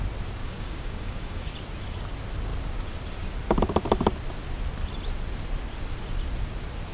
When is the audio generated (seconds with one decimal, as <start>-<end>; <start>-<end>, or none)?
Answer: 0.4-1.5